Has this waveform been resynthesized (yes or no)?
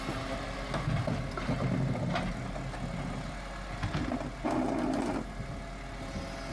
no